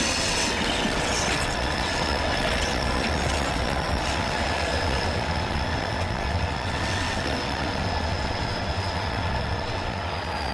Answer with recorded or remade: remade